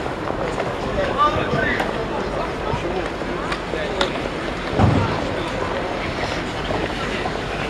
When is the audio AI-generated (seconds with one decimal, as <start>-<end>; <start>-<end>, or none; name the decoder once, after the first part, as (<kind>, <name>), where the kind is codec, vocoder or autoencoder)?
0.0-2.0 (codec, DAC); 6.6-7.7

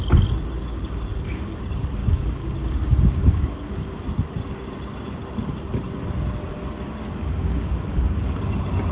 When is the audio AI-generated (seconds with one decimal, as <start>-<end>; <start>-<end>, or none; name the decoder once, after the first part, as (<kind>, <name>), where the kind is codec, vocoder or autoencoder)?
0.7-1.6 (codec, DAC); 2.0-4.0; 7.2-8.4